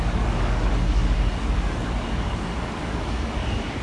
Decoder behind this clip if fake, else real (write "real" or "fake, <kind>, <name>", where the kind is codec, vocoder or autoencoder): fake, codec, DAC